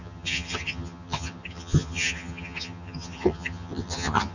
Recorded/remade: remade